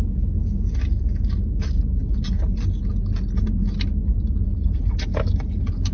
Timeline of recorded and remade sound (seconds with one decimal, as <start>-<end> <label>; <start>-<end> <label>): 0.0-5.9 recorded